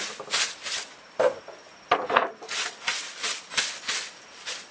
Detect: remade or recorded recorded